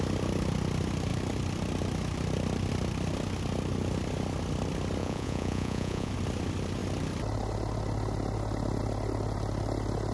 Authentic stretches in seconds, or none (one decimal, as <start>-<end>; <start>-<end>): 0.0-5.0; 6.1-10.1

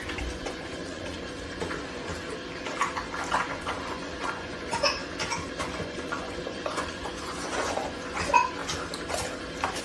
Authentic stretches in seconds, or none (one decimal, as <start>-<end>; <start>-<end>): 2.1-3.3; 5.0-5.6; 8.6-9.8

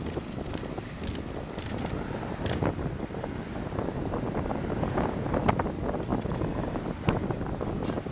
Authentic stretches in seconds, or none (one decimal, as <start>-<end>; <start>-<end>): 0.0-8.1

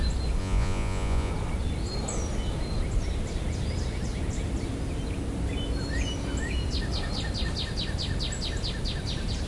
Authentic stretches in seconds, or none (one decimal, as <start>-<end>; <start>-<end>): 0.0-0.4; 1.3-9.5

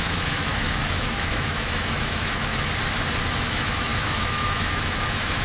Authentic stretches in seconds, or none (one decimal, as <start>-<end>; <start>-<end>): 2.5-3.2